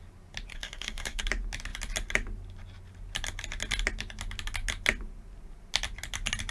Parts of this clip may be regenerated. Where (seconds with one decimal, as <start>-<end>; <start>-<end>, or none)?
0.5-1.2